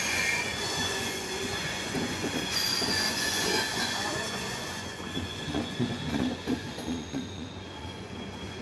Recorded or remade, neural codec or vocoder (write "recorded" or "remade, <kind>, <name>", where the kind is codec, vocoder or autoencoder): remade, vocoder, Vocos